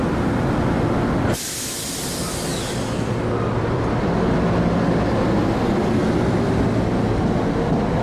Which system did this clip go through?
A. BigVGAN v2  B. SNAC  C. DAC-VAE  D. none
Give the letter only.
D